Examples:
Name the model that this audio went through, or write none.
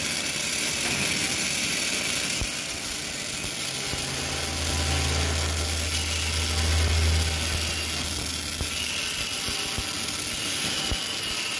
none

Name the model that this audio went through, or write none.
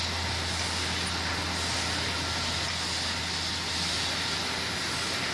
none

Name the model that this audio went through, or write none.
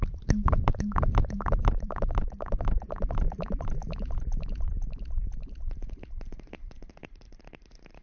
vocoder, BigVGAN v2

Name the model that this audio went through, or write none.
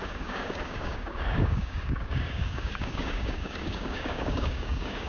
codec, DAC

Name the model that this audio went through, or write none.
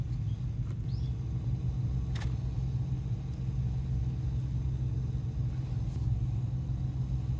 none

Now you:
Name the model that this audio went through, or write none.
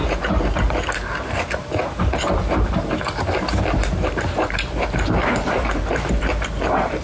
vocoder, BigVGAN v2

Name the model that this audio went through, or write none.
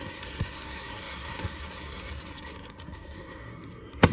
codec, SNAC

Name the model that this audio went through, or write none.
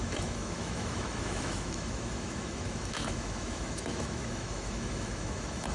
autoencoder, DAC-VAE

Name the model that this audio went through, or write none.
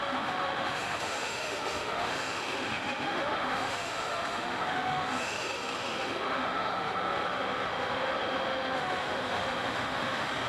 autoencoder, DAC-VAE